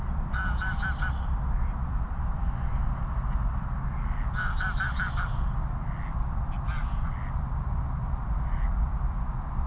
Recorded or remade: recorded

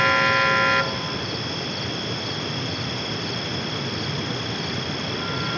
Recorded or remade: recorded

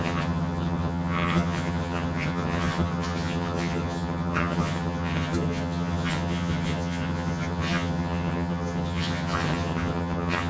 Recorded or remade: remade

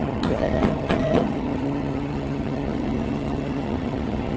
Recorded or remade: remade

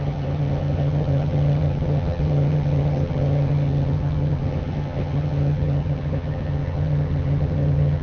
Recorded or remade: remade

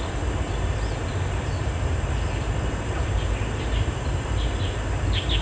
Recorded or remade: recorded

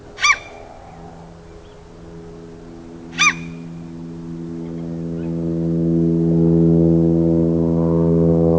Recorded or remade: recorded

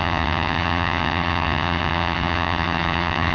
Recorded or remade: remade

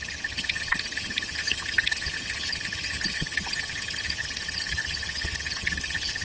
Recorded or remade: remade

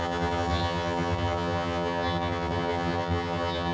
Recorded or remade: remade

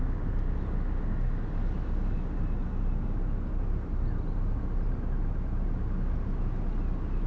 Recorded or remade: recorded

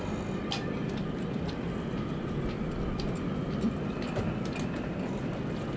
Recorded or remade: recorded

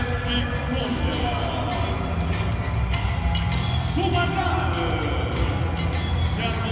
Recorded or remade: recorded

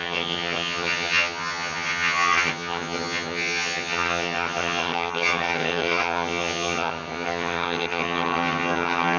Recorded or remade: remade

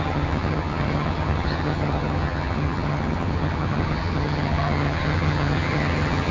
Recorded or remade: remade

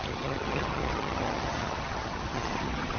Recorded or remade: remade